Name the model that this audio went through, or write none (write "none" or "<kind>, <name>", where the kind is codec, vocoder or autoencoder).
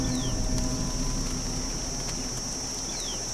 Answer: none